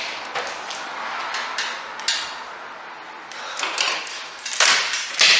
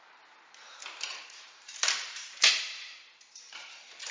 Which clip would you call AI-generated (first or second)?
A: second